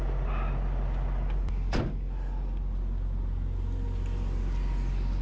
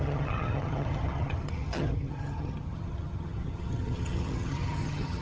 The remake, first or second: second